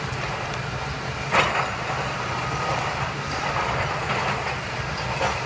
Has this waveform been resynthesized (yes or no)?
no